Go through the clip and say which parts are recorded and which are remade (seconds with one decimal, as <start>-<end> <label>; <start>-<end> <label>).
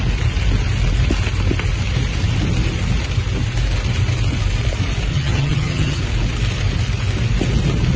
0.0-5.1 recorded; 5.1-6.0 remade; 6.0-8.0 recorded